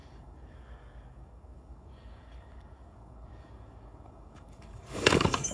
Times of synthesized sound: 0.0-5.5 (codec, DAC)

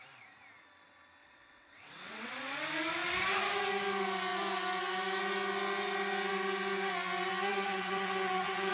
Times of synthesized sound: 1.2-2.3 (vocoder, WaveNeXt); 7.5-8.7

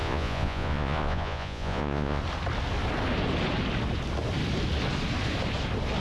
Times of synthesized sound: 0.0-2.2 (vocoder, Vocos)

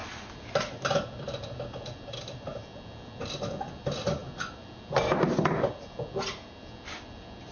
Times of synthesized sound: none

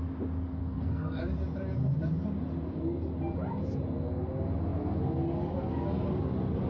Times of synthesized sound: 0.6-1.2 (codec, SNAC)

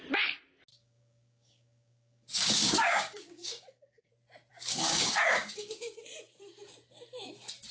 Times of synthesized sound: 0.7-4.1 (codec, DAC); 4.5-6.0

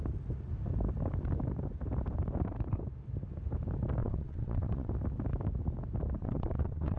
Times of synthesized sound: 4.0-4.9 (vocoder, WaveNeXt); 6.2-7.0